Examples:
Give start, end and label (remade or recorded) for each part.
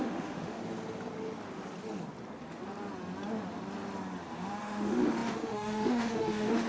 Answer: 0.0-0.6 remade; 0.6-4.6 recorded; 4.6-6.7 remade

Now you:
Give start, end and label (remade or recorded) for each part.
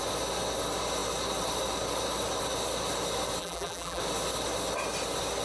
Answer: 0.0-3.4 recorded; 3.4-4.0 remade; 4.0-5.4 recorded